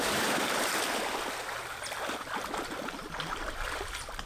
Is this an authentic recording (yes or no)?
yes